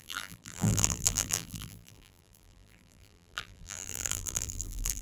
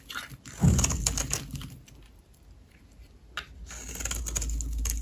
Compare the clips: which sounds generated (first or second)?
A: first